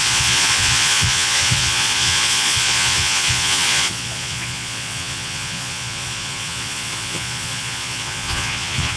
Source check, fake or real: fake